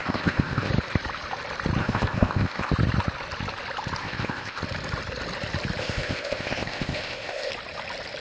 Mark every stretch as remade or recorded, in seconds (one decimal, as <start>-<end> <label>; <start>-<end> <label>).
0.0-0.7 remade; 0.7-1.8 recorded; 1.8-2.7 remade; 2.7-4.0 recorded; 4.0-4.6 remade; 4.6-5.8 recorded; 5.8-7.5 remade; 7.5-8.2 recorded